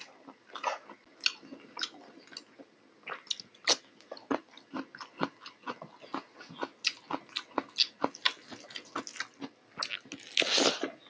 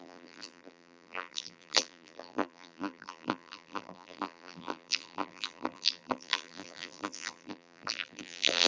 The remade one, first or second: second